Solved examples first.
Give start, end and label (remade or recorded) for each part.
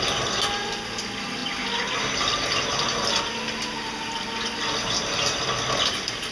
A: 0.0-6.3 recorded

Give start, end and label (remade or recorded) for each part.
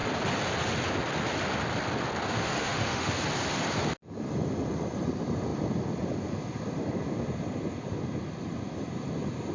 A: 0.0-2.4 recorded; 2.4-3.1 remade; 3.1-9.5 recorded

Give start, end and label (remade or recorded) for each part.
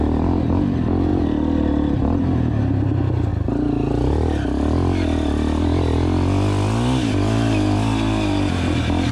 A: 0.0-9.1 recorded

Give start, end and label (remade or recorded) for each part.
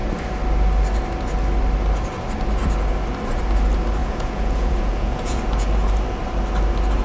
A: 0.0-4.0 recorded; 4.0-5.4 remade; 5.4-7.0 recorded